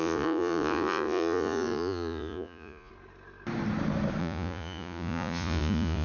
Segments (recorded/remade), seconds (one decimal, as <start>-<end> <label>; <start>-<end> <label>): 0.0-2.9 remade; 2.9-4.2 recorded; 4.2-6.0 remade